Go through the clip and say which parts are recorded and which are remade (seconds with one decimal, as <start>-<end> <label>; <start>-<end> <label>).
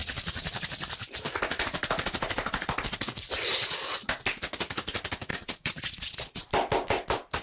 0.0-0.6 remade; 0.6-5.3 recorded; 5.3-6.5 remade; 6.5-7.4 recorded